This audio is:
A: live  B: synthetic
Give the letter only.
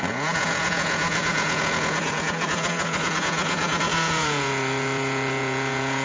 B